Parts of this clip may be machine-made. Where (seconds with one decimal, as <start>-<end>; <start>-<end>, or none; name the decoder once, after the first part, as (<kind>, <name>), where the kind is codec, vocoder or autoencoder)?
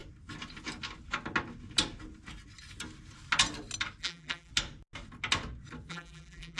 4.0-4.5 (vocoder, BigVGAN v2); 5.9-6.6